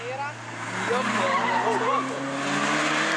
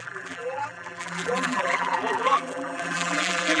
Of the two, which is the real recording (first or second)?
first